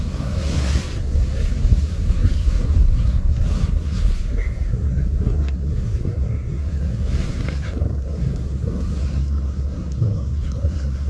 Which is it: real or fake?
fake